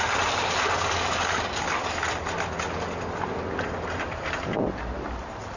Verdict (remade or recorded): recorded